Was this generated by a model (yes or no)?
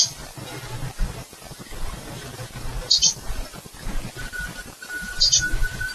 yes